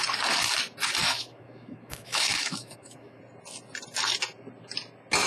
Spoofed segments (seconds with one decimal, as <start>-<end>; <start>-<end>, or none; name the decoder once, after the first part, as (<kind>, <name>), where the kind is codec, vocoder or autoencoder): 1.0-3.2 (autoencoder, DAC-VAE)